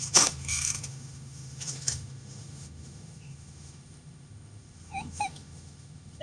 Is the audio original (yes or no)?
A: no